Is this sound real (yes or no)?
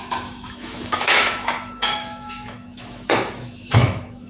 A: no